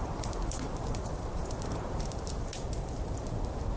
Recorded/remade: remade